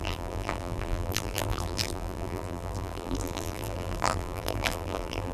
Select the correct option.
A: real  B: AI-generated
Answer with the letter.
B